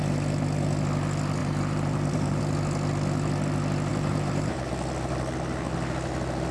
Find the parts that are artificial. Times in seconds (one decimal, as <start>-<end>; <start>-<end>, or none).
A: 1.4-2.4; 3.9-4.7